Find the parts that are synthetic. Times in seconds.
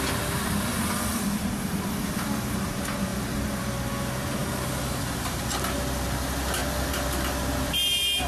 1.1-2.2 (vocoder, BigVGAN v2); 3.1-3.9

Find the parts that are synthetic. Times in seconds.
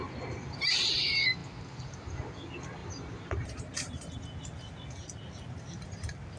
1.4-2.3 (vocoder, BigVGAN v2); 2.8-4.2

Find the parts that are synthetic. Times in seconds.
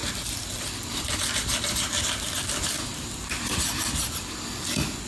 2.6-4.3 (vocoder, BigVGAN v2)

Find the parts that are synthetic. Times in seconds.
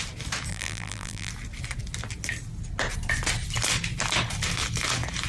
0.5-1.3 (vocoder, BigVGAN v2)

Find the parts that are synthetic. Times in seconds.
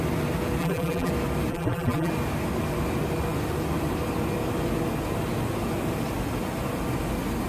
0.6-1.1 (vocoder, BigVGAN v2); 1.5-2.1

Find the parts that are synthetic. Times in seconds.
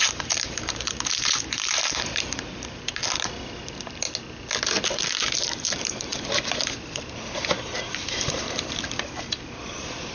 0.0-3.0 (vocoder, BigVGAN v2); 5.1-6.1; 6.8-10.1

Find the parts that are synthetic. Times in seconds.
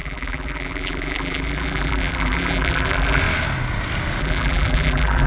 0.0-3.2 (vocoder, BigVGAN v2); 4.2-5.3